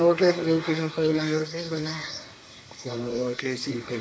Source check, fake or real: fake